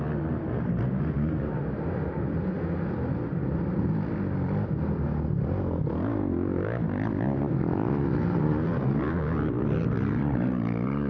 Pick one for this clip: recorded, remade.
recorded